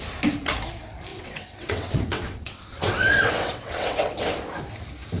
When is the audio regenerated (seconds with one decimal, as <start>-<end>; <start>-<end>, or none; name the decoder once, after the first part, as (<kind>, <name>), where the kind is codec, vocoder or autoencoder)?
1.1-4.2 (vocoder, WaveNeXt)